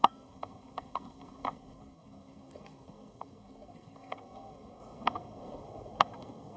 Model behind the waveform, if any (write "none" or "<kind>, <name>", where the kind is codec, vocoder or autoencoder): codec, SNAC